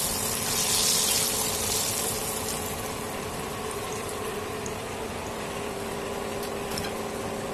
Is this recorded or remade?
recorded